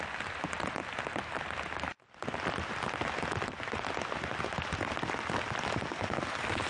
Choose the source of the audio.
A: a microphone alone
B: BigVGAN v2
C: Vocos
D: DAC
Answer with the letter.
A